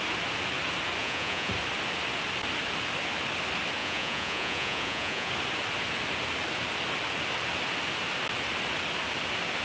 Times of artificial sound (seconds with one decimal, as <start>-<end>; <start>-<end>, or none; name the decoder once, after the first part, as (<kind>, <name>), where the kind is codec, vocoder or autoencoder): 1.0-1.5 (vocoder, Vocos); 3.8-5.3